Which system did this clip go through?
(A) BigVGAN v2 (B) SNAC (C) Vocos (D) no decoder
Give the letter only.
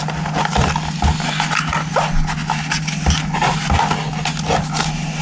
D